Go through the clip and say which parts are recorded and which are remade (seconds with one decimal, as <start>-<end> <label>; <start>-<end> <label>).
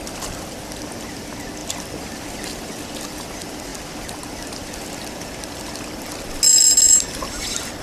0.0-7.8 recorded